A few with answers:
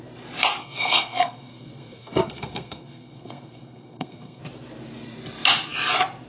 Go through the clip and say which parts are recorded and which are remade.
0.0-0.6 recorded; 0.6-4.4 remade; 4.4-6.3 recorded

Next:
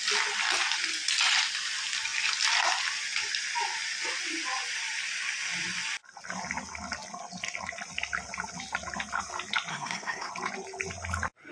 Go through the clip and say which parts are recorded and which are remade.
0.0-9.7 recorded; 9.7-10.3 remade; 10.3-11.5 recorded

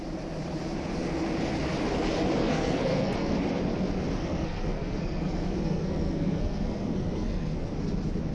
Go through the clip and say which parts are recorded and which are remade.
0.0-2.4 recorded; 2.4-3.4 remade; 3.4-4.2 recorded; 4.2-7.7 remade; 7.7-8.3 recorded

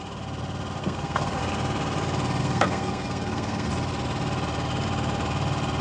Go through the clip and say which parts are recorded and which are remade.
0.0-0.8 recorded; 0.8-1.4 remade; 1.4-2.4 recorded; 2.4-3.7 remade; 3.7-5.8 recorded

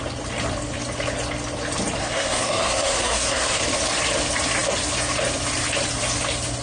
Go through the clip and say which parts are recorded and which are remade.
0.0-2.0 recorded; 2.0-3.6 remade; 3.6-6.6 recorded

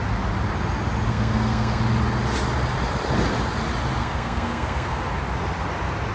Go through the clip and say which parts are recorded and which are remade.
0.0-1.1 recorded; 1.1-1.8 remade; 1.8-4.0 recorded; 4.0-5.0 remade; 5.0-6.1 recorded

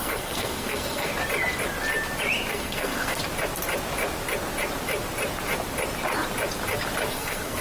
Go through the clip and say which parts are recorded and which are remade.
0.0-1.1 remade; 1.1-2.5 recorded; 2.5-3.2 remade; 3.2-7.1 recorded; 7.1-7.6 remade